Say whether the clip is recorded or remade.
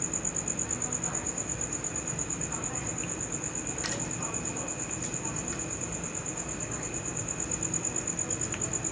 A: recorded